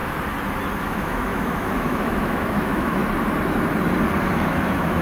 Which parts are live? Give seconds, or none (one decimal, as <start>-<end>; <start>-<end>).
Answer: 0.0-0.8; 3.0-4.2